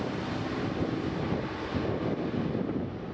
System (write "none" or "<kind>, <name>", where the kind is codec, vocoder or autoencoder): none